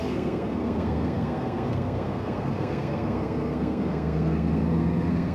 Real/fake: fake